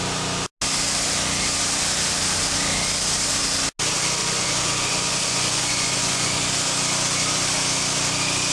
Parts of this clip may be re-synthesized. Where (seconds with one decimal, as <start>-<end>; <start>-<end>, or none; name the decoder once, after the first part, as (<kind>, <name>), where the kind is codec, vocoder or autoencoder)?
4.2-6.5 (vocoder, Vocos)